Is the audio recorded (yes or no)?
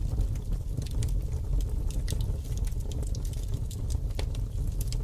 yes